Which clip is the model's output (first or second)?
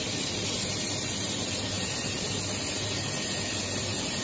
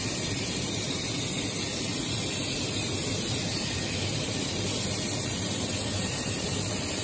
second